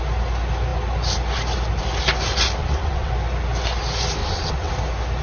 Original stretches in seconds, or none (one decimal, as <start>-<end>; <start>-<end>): 0.0-2.6; 3.1-4.2; 4.7-5.2